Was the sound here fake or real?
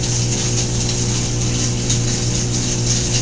real